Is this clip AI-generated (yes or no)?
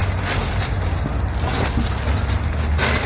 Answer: no